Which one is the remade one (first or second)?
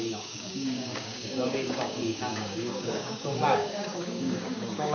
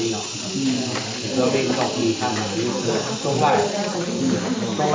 first